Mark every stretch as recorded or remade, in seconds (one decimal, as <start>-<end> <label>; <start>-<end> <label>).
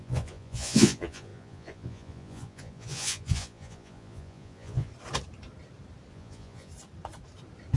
0.0-4.9 remade; 4.9-6.1 recorded; 6.1-6.7 remade; 6.7-7.8 recorded